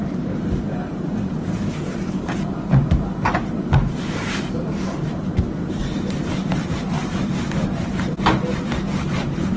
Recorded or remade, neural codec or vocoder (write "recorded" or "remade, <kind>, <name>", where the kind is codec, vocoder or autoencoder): remade, vocoder, BigVGAN v2